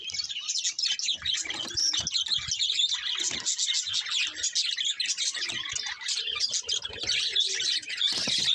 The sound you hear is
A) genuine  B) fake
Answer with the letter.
A